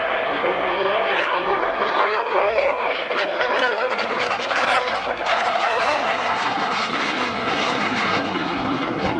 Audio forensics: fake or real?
fake